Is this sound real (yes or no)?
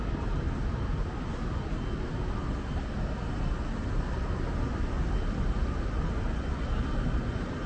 yes